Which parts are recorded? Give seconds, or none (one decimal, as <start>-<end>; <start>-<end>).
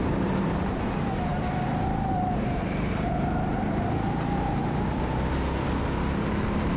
1.3-2.1; 4.6-5.8